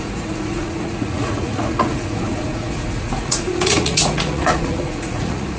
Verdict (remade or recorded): remade